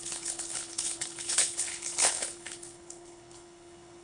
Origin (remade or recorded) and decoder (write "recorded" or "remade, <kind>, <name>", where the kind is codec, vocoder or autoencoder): remade, codec, HILCodec